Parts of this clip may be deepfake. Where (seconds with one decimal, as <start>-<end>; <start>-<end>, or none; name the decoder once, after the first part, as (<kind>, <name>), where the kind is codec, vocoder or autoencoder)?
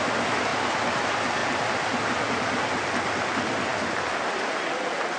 1.4-2.0 (vocoder, BigVGAN v2); 3.7-4.4